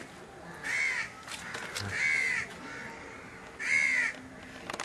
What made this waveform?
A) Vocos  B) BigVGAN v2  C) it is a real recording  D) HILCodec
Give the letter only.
C